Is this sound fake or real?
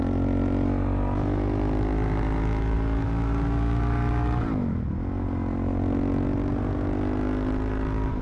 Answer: real